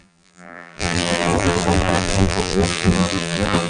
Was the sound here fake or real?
fake